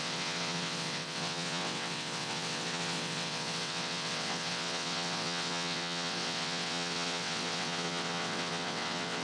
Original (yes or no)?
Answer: no